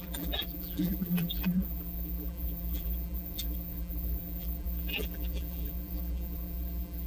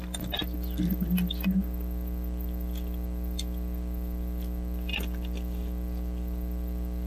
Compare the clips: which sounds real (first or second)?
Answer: second